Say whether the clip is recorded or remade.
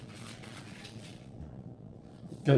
remade